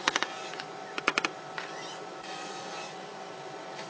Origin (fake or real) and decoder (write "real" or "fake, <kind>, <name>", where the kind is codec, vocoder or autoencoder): fake, vocoder, Vocos